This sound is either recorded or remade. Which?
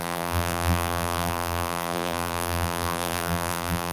remade